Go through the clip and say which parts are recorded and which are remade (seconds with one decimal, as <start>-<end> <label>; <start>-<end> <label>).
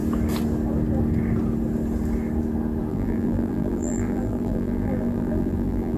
0.0-2.9 recorded; 2.9-6.0 remade